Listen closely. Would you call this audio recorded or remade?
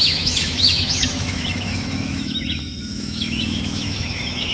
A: remade